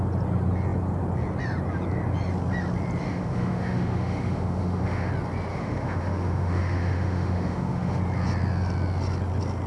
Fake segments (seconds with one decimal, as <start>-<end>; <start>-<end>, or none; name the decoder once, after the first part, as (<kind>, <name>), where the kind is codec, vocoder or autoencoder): 3.1-5.1 (autoencoder, DAC-VAE); 5.5-8.0